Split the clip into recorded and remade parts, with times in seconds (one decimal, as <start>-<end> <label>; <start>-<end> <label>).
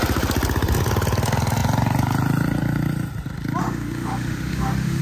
0.0-3.6 recorded; 3.6-5.0 remade